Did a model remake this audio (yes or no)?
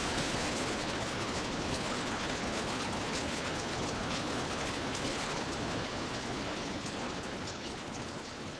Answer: yes